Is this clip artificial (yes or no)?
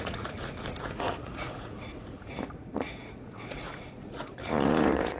yes